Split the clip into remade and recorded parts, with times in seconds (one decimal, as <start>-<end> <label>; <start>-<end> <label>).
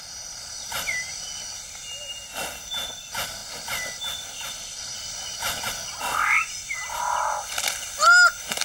0.0-8.6 recorded